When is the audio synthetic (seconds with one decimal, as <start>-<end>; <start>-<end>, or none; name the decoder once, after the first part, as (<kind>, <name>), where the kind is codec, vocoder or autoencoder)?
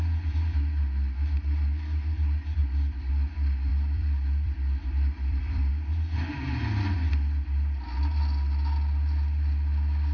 2.6-3.1 (vocoder, BigVGAN v2); 3.7-5.7